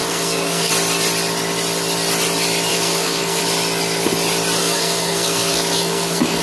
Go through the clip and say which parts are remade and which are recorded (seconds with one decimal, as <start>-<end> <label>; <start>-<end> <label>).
0.0-0.7 remade; 0.7-2.7 recorded; 2.7-3.4 remade; 3.4-4.6 recorded; 4.6-6.4 remade